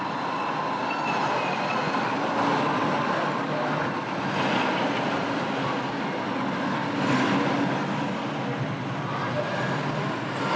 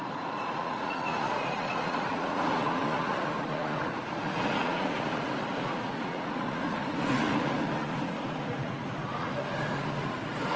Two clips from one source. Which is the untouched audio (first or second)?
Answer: first